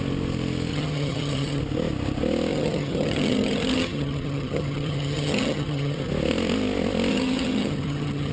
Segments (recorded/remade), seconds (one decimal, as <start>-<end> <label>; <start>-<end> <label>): 0.0-0.7 recorded; 0.7-1.6 remade; 1.6-2.5 recorded; 2.5-6.1 remade; 6.1-7.1 recorded; 7.1-8.3 remade